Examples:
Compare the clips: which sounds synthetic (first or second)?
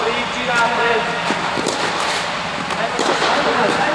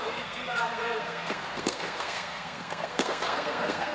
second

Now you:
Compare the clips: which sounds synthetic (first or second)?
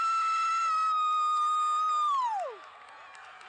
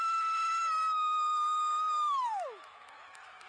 second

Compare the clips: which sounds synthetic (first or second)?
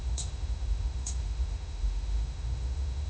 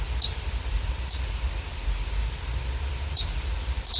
first